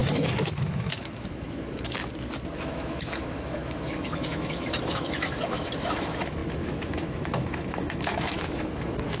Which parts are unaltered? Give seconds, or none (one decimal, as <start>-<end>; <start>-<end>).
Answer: 2.0-2.6